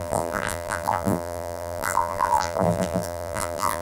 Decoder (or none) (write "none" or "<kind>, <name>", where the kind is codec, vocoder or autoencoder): vocoder, BigVGAN v2